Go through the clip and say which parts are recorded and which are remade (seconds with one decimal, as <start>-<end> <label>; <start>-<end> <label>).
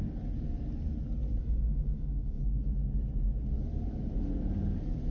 0.0-1.4 recorded; 1.4-2.4 remade; 2.4-5.1 recorded